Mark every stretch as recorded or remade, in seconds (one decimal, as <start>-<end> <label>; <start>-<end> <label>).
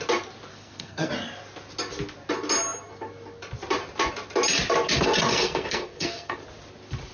0.0-0.5 recorded; 0.5-1.1 remade; 1.1-5.3 recorded; 5.3-6.4 remade; 6.4-7.1 recorded